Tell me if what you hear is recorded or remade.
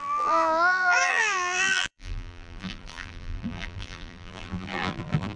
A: remade